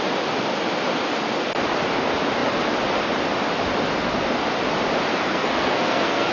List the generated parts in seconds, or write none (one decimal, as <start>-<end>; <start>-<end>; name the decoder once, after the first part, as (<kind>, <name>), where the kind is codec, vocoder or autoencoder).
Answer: 5.1-6.3 (codec, SNAC)